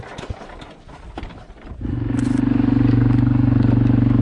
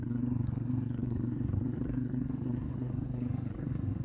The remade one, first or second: second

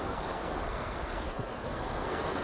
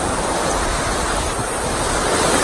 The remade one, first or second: first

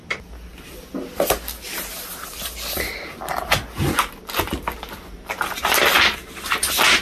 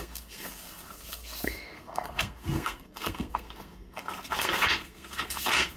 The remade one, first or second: second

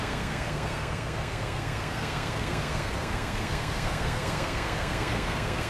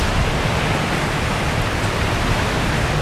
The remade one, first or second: first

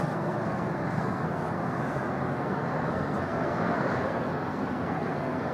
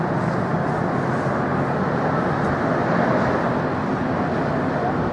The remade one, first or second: first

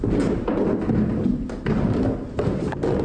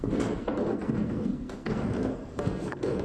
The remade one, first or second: second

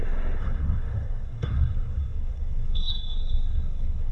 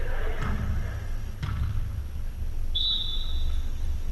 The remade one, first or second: first